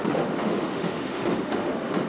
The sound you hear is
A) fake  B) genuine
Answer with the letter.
A